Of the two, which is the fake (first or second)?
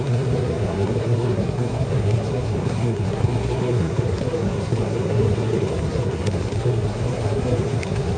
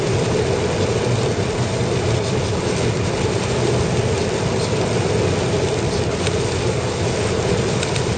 first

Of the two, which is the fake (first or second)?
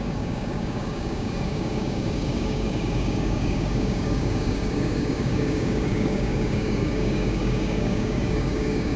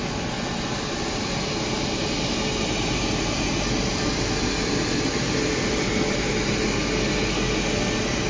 first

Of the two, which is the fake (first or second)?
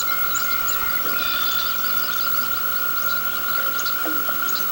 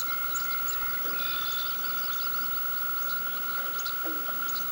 first